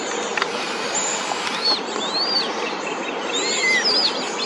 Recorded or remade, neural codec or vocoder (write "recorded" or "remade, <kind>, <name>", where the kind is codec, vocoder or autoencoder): recorded